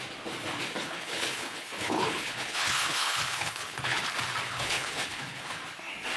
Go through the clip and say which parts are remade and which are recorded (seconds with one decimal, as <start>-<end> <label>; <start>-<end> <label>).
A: 0.0-0.8 recorded; 0.8-4.0 remade; 4.0-4.5 recorded; 4.5-5.6 remade; 5.6-6.2 recorded